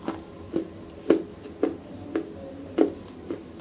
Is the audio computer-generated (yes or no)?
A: no